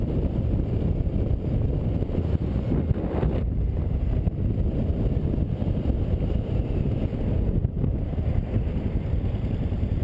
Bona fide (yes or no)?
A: no